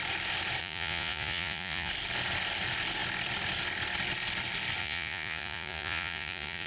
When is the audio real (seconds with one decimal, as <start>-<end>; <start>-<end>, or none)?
0.0-0.6; 1.9-4.8